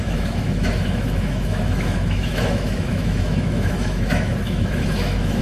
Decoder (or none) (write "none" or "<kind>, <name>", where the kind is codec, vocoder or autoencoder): autoencoder, DAC-VAE